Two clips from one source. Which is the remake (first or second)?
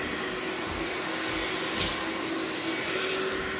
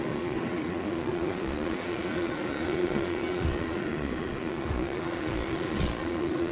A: second